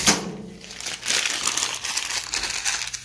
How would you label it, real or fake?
real